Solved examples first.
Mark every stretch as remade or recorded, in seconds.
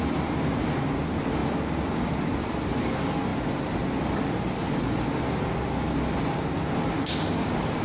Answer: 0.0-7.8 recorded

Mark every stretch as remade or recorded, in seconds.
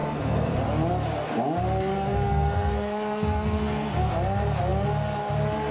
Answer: 0.0-0.6 remade; 0.6-1.9 recorded; 1.9-4.1 remade; 4.1-5.7 recorded